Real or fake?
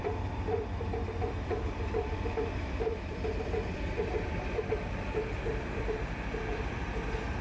fake